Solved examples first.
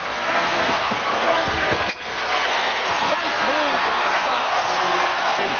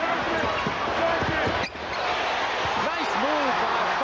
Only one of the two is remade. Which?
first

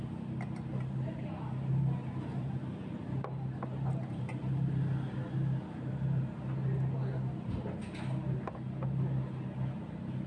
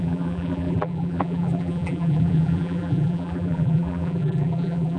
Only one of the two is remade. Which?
second